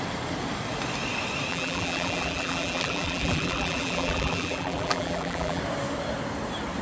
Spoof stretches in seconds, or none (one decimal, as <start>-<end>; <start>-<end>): 1.5-5.6